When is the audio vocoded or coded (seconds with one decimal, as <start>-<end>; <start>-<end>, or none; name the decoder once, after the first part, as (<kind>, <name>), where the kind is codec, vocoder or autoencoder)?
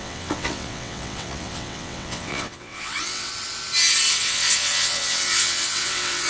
0.0-3.3 (vocoder, WaveNeXt); 4.1-6.3